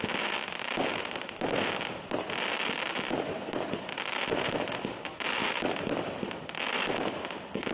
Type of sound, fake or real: real